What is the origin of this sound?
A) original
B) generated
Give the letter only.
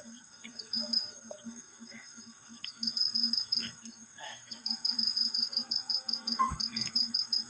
B